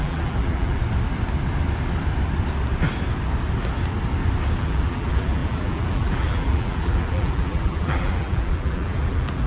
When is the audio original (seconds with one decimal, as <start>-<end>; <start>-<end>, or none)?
0.8-4.6